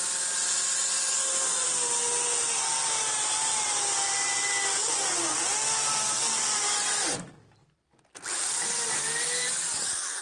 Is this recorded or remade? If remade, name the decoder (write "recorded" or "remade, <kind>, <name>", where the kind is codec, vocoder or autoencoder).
recorded